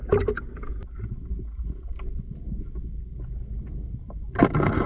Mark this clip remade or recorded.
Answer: recorded